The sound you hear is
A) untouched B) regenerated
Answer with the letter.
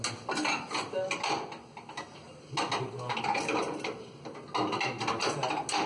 A